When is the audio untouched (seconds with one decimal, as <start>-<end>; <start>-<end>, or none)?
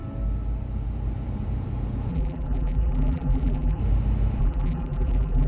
0.0-2.1; 3.8-4.4